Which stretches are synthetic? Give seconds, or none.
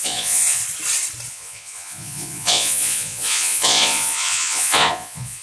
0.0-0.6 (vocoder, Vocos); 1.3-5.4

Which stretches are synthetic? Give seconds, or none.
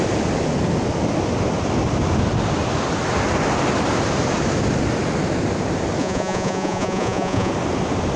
6.0-7.5 (vocoder, Vocos)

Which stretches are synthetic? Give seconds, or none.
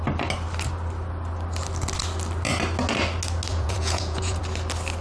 3.5-4.4 (vocoder, Vocos)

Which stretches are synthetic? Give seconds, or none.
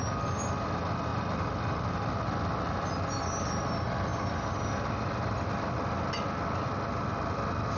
none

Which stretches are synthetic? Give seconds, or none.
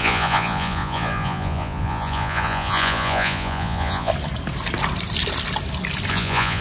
0.0-4.1 (vocoder, Vocos); 6.1-6.6